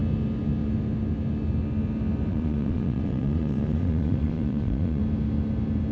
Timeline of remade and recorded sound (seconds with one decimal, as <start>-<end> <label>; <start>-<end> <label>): 0.0-2.3 recorded; 2.3-5.0 remade; 5.0-5.9 recorded